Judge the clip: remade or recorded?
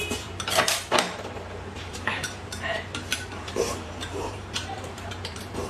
remade